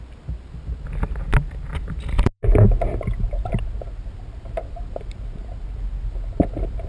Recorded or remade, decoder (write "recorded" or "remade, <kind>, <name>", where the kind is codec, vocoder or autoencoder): recorded